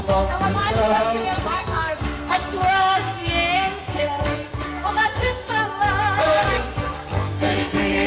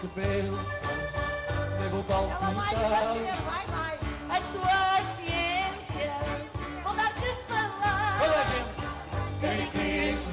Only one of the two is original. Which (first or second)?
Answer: second